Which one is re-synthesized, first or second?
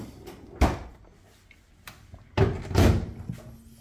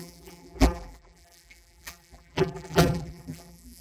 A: second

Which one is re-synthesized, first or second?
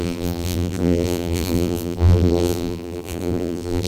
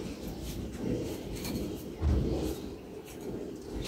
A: first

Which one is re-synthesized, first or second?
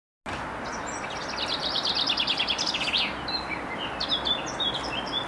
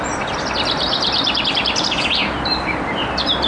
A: second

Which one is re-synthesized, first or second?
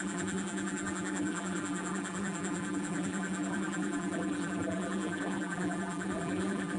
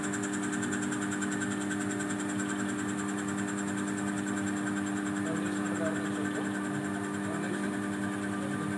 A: first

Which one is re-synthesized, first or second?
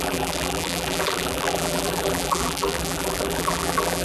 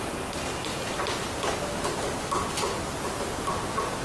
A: first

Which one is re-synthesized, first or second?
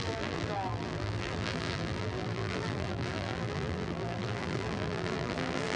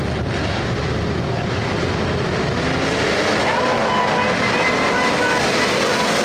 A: first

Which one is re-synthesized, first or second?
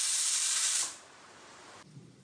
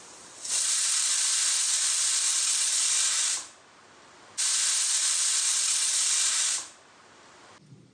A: first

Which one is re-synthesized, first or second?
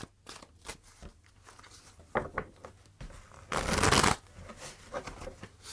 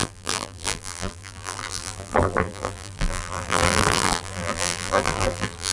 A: second